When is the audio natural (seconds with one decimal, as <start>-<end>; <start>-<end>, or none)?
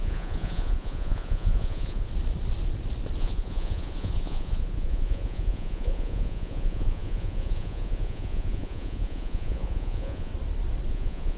2.1-3.2; 10.3-10.9